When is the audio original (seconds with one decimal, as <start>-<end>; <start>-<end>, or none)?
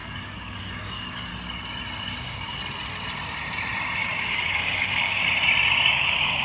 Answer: 1.3-2.2; 2.6-4.2; 5.2-5.9